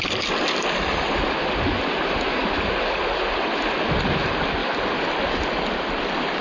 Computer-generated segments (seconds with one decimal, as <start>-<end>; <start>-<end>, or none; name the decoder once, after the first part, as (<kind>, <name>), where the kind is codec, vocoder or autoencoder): none